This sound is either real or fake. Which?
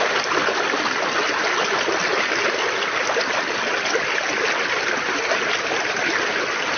real